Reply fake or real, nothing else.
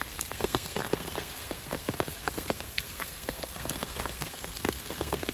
fake